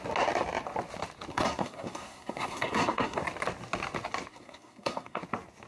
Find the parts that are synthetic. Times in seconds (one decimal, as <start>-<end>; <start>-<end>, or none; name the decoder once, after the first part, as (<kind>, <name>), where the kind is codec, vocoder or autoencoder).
1.3-3.2 (codec, SNAC); 4.3-5.2